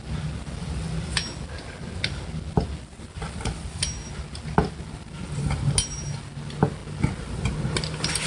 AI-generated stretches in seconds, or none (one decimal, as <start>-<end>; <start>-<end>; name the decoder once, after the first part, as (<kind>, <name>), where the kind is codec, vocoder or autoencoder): none